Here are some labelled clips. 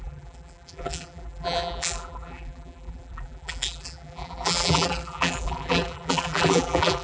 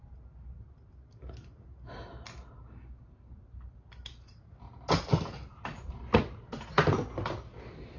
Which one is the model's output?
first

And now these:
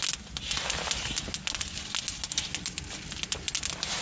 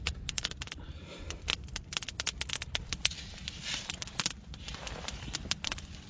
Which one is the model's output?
second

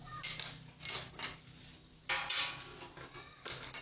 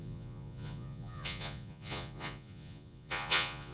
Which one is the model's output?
second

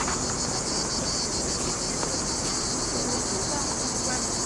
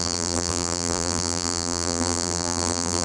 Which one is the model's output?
second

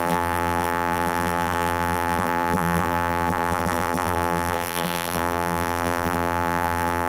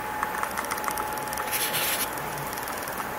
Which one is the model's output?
first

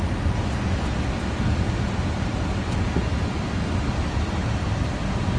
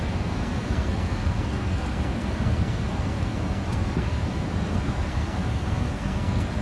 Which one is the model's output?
second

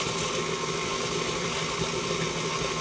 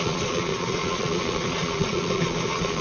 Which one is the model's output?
second